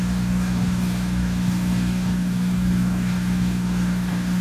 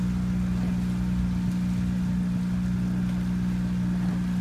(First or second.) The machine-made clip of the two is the first